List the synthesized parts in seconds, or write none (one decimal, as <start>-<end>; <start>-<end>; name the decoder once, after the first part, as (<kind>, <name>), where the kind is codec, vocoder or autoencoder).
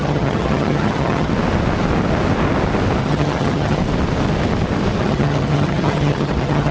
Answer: 0.0-1.3 (vocoder, HiFi-GAN); 3.0-3.8; 5.0-6.7